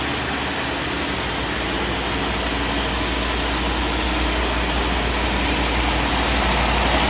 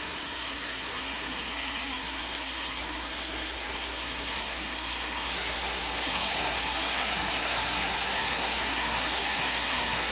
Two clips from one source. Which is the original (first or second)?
first